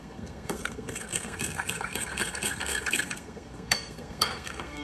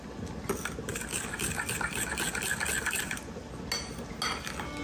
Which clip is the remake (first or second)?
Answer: first